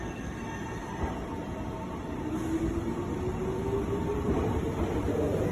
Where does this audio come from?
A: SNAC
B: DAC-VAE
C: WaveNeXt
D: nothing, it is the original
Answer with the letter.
D